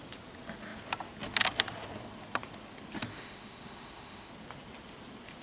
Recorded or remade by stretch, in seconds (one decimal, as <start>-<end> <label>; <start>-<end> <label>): 0.0-3.1 recorded; 3.1-4.3 remade; 4.3-5.4 recorded